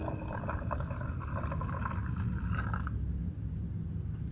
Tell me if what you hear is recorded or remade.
recorded